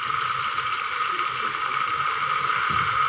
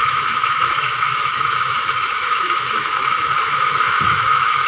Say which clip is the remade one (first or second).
second